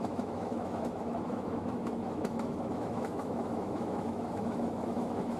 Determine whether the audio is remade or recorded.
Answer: remade